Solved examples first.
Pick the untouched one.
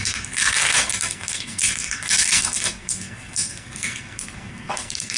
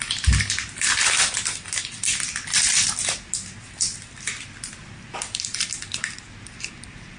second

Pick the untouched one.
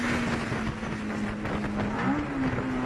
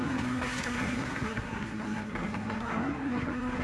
first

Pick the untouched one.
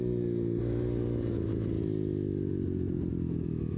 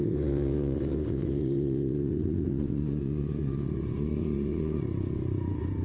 first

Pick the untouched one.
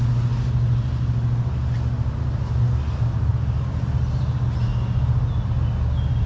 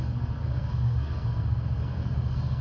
first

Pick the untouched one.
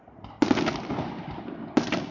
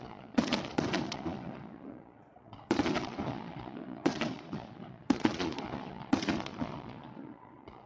first